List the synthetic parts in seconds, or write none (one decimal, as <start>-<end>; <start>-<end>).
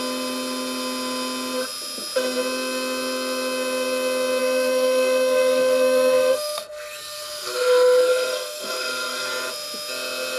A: 4.4-9.3